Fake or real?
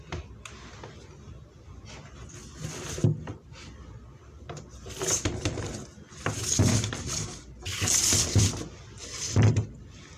real